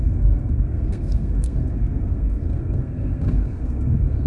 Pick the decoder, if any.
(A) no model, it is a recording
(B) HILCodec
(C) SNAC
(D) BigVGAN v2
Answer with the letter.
C